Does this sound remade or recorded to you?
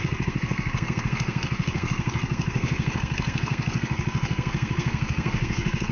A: remade